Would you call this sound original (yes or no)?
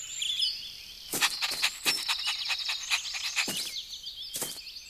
yes